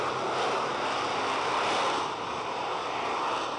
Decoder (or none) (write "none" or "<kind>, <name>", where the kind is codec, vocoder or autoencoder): none